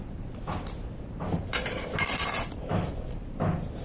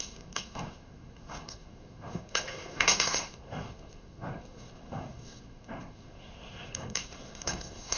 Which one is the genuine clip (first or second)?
first